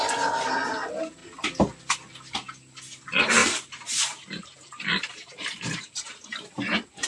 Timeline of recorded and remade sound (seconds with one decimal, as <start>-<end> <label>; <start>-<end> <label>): 0.0-3.4 recorded; 3.4-6.1 remade; 6.1-7.1 recorded